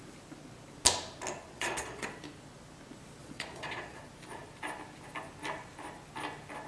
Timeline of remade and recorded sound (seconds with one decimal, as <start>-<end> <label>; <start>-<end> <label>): 0.0-1.5 recorded; 1.5-2.1 remade; 2.1-3.2 recorded; 3.2-4.0 remade; 4.0-6.7 recorded